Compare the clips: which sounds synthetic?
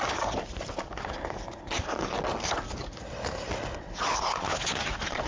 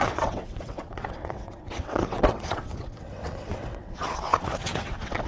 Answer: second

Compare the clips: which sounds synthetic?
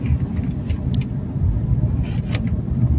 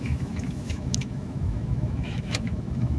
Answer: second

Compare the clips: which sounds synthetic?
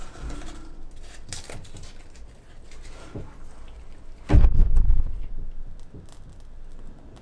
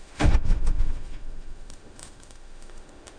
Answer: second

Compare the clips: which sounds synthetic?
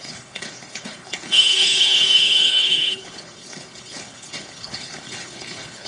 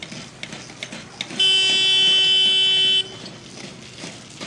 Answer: first